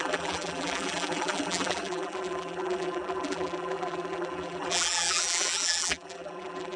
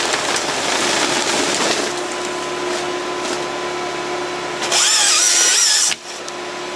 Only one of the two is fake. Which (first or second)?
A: first